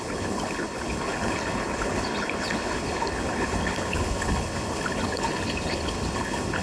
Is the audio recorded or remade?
remade